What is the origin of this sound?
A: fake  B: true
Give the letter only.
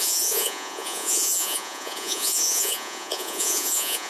A